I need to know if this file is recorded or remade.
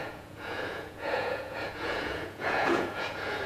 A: remade